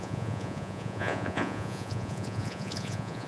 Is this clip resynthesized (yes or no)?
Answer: yes